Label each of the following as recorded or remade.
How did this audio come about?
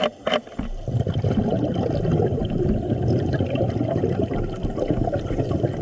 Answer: recorded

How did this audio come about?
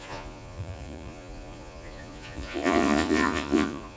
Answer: remade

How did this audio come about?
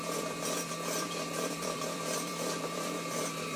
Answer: remade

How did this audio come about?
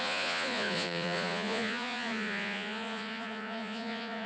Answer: remade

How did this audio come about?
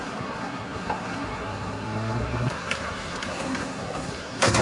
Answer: remade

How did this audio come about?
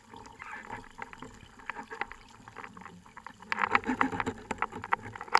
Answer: recorded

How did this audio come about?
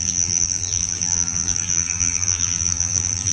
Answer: remade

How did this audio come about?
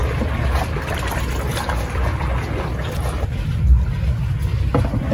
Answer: recorded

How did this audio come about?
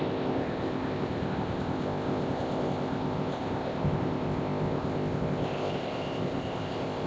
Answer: remade